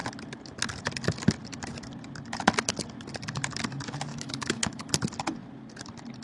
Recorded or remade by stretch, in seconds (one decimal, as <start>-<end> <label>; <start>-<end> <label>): 0.0-4.1 recorded; 4.1-4.9 remade; 4.9-6.2 recorded